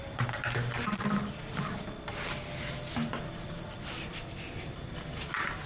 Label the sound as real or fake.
real